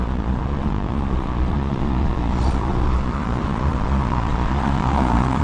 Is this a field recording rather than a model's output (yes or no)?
no